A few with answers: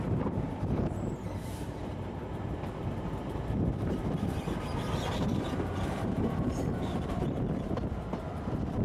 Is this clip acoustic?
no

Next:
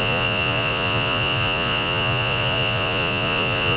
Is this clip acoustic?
no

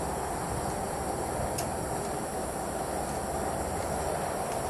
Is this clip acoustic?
yes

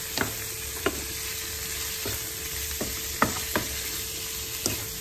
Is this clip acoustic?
yes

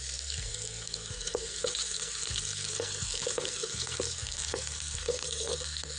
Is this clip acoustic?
no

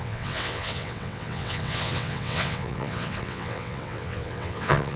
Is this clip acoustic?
no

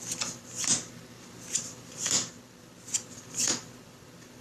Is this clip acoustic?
yes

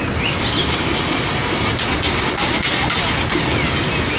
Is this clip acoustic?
yes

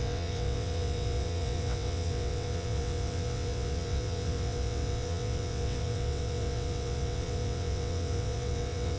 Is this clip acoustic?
no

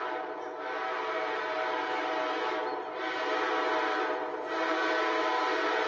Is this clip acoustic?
yes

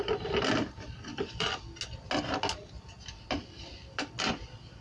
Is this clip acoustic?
yes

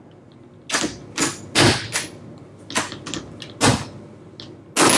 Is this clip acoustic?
yes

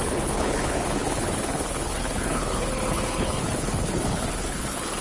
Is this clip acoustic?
no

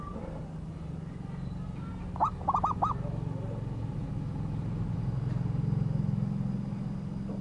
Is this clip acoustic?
yes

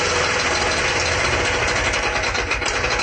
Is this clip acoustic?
yes